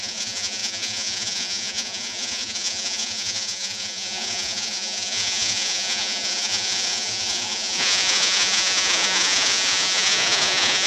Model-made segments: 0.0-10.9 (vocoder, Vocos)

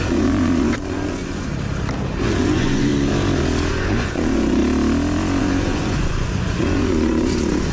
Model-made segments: 0.0-1.5 (vocoder, Vocos); 2.2-2.9; 3.7-4.6; 5.4-7.7

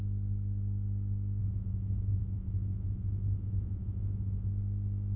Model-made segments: 1.4-4.5 (vocoder, Vocos)

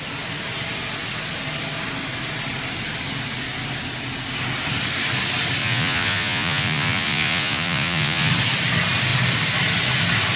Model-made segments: 5.6-8.3 (vocoder, Vocos)

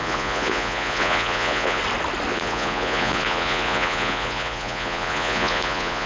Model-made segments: 0.0-1.8 (vocoder, Vocos); 2.3-6.1

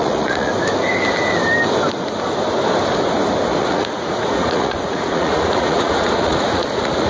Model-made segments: 0.0-0.5 (vocoder, Vocos); 3.6-7.1

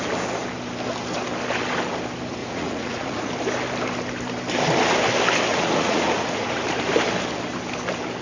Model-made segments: 2.4-3.3 (vocoder, Vocos); 5.5-6.6